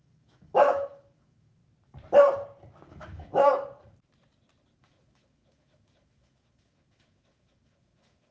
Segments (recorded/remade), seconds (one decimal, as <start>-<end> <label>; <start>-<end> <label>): 0.0-1.6 remade; 1.6-2.9 recorded; 2.9-3.5 remade; 3.5-4.8 recorded; 4.8-8.3 remade